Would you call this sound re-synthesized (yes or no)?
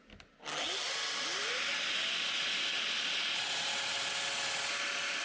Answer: no